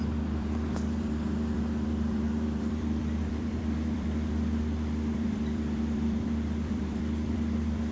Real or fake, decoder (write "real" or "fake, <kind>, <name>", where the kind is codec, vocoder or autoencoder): fake, vocoder, BigVGAN v2